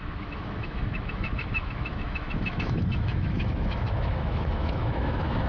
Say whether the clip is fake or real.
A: fake